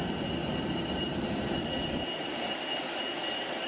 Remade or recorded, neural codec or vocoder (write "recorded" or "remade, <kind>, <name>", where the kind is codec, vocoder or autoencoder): remade, vocoder, BigVGAN v2